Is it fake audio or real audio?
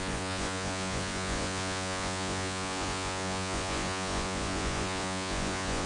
fake